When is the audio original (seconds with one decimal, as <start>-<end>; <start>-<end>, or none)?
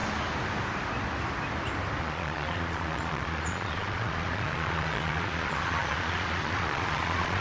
0.0-2.0